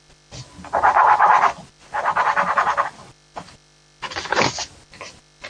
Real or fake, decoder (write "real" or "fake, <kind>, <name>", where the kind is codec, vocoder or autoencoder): fake, vocoder, BigVGAN v2